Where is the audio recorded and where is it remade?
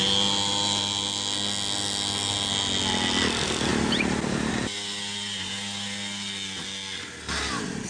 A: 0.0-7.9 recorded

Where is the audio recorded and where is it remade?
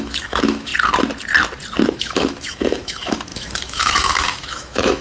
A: 0.0-0.7 remade; 0.7-1.9 recorded; 1.9-5.0 remade